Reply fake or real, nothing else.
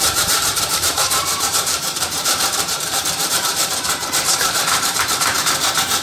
fake